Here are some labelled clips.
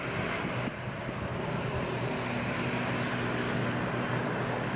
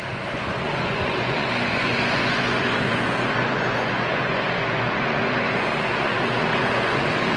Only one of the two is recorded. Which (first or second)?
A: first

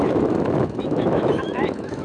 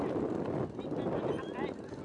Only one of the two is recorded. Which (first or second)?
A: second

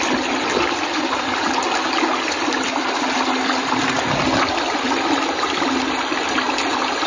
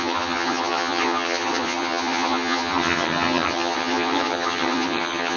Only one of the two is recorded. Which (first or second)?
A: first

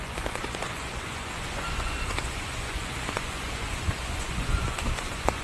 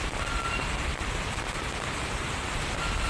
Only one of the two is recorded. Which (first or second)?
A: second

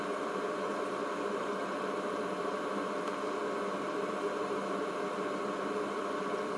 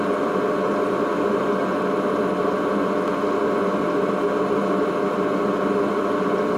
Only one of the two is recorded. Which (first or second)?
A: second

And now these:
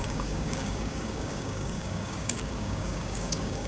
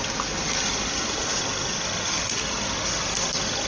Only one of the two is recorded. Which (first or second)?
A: second